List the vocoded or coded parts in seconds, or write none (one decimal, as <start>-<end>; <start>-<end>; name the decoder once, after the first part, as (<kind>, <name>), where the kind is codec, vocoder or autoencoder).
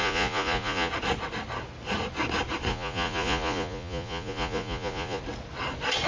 0.0-0.9 (vocoder, Vocos); 2.7-5.2